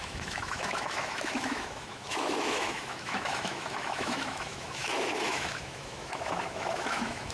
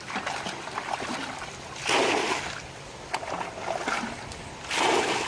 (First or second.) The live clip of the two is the second